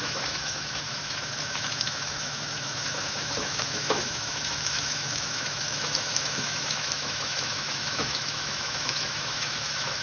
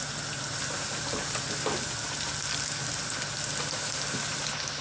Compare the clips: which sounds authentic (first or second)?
second